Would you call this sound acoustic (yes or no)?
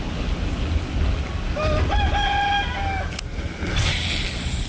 yes